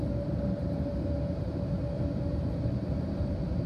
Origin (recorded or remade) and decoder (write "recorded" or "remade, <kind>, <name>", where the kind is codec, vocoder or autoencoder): recorded